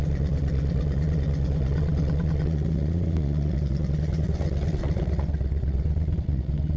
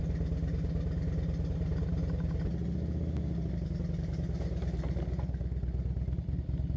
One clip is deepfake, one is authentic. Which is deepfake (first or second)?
first